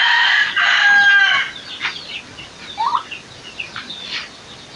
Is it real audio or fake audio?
real